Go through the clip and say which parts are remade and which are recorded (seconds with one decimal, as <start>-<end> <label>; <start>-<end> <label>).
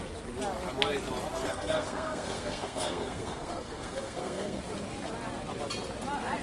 0.0-1.4 recorded; 1.4-4.6 remade; 4.6-6.4 recorded